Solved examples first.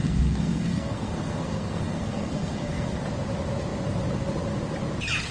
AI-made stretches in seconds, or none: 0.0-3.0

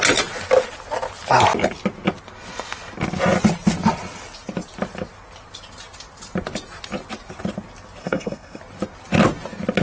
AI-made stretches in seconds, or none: 8.0-8.6

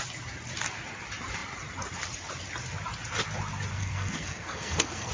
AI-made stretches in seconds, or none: 3.7-5.1

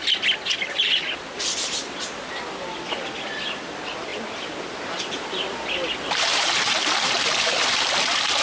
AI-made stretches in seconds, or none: none

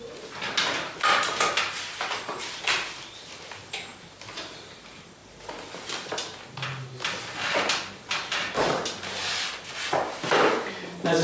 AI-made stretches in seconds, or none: none

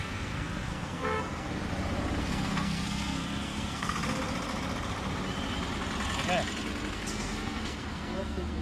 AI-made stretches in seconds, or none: 0.0-1.6; 2.2-4.0; 6.9-8.6

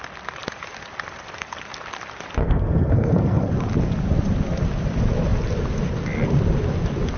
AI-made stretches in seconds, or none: 2.4-3.5